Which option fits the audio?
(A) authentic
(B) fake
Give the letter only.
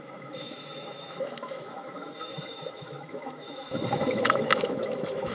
B